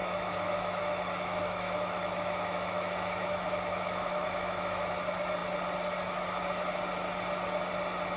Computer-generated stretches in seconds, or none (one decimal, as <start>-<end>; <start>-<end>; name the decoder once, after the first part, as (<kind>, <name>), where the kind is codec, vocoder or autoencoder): 0.0-4.9 (autoencoder, DAC-VAE)